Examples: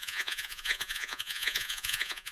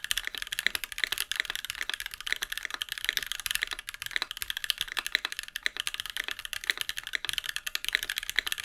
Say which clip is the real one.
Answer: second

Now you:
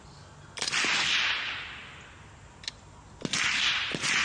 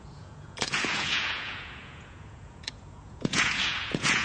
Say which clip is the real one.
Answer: first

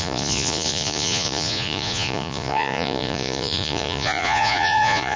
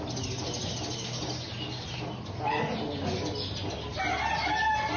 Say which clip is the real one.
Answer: second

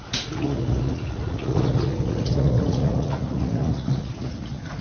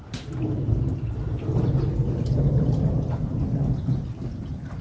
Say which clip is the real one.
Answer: second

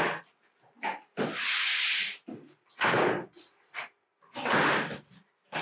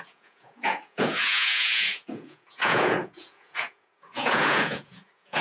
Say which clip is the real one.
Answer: first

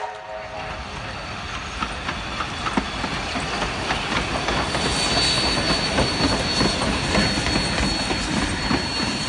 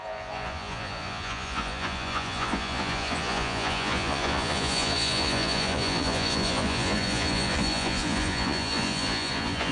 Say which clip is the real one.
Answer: first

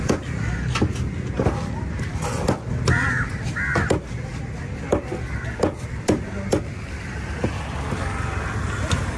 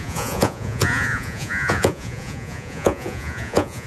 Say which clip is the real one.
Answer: first